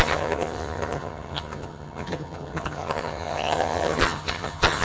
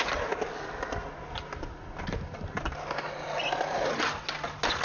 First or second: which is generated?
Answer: first